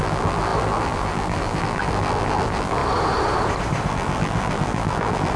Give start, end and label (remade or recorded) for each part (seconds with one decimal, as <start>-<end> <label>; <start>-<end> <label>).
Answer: 0.0-2.8 remade; 2.8-3.9 recorded; 3.9-5.4 remade